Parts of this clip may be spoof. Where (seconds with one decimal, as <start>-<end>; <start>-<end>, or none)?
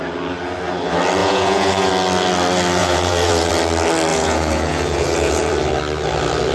1.2-1.9; 2.8-3.5; 4.1-5.5